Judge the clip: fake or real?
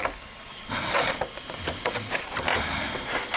real